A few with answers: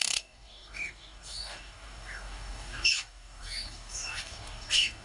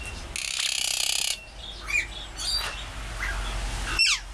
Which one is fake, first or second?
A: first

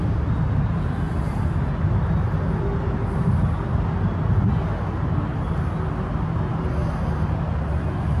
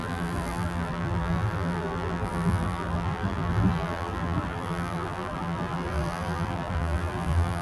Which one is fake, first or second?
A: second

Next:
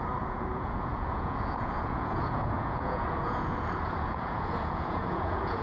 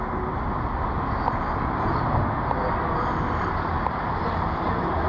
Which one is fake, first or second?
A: first